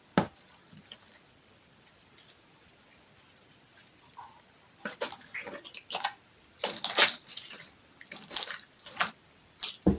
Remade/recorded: recorded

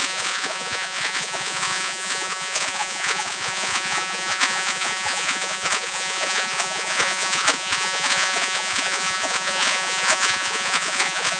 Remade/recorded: remade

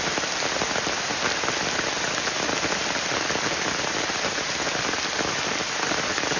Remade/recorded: recorded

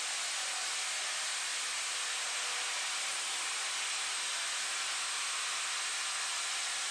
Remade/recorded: recorded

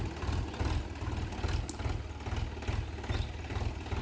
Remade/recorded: recorded